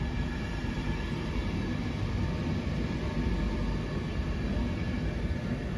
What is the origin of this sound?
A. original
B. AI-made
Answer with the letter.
A